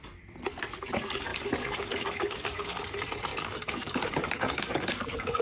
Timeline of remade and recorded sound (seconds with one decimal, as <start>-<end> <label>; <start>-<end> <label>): 0.0-1.3 recorded; 1.3-2.8 remade; 2.8-3.3 recorded; 3.3-5.4 remade